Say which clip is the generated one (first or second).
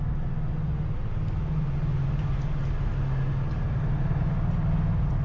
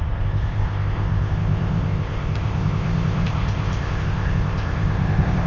second